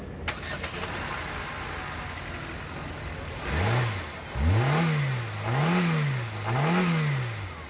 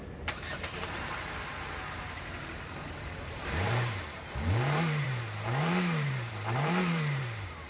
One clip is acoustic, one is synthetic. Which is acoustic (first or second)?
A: first